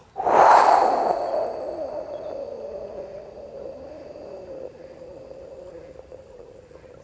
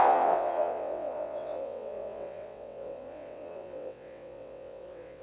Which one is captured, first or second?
first